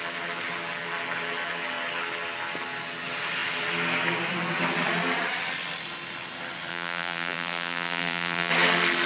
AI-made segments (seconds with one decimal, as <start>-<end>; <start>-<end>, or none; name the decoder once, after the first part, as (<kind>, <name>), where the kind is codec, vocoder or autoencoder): 6.7-8.5 (vocoder, BigVGAN v2)